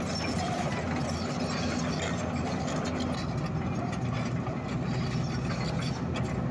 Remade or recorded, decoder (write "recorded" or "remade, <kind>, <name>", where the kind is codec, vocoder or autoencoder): recorded